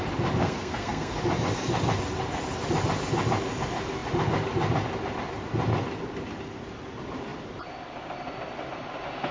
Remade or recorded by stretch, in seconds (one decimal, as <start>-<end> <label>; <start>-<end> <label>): 0.0-0.4 recorded; 0.4-1.1 remade; 1.1-9.3 recorded